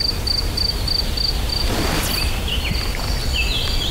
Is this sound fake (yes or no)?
no